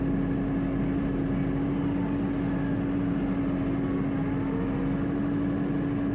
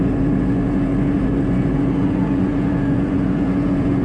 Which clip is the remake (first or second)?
second